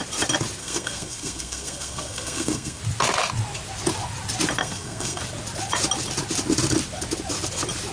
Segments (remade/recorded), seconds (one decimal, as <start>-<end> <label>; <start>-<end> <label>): 0.0-0.6 recorded; 0.6-2.8 remade; 2.8-4.6 recorded; 4.6-5.2 remade; 5.2-7.9 recorded